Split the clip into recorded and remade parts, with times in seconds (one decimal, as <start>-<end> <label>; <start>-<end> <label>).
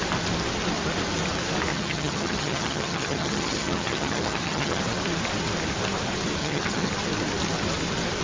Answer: 0.0-1.7 recorded; 1.7-4.8 remade; 4.8-6.4 recorded; 6.4-6.9 remade; 6.9-8.2 recorded